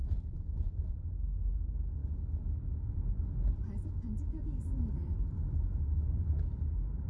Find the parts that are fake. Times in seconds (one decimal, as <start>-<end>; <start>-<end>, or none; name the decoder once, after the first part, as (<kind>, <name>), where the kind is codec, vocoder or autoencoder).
0.0-1.0 (vocoder, BigVGAN v2)